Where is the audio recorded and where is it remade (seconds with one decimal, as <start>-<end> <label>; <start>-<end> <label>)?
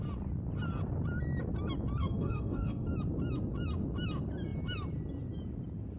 0.0-2.0 recorded; 2.0-2.9 remade; 2.9-6.0 recorded